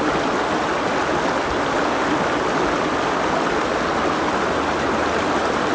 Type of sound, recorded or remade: recorded